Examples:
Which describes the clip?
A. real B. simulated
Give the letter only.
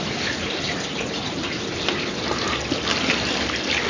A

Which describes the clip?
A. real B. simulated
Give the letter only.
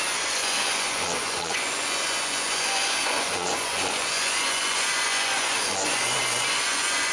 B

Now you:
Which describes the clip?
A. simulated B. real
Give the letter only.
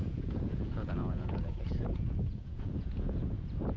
A